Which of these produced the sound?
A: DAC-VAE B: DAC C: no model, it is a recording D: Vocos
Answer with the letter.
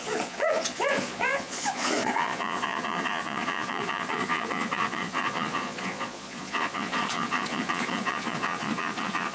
D